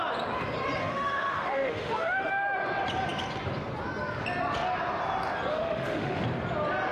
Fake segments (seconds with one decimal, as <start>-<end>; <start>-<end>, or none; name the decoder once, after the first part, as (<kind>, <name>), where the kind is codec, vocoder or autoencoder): 0.8-2.3 (autoencoder, DAC-VAE); 5.5-6.2